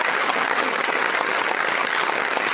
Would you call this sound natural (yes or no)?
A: no